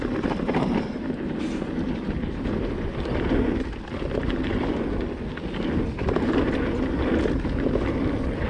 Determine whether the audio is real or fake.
real